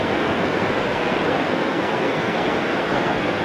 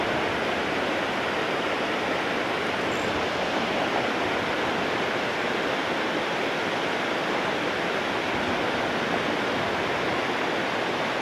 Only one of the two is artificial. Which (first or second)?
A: first